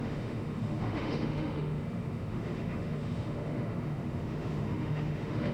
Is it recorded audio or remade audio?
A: remade